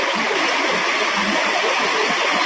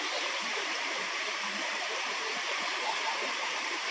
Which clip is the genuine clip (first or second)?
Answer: first